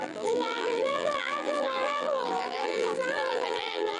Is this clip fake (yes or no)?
yes